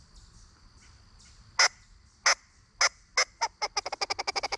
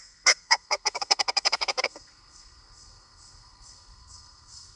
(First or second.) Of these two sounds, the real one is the first